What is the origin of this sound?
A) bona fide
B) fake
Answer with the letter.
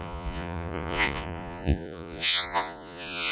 B